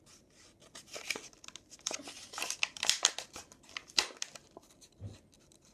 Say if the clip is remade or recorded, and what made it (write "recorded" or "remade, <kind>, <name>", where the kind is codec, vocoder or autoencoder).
recorded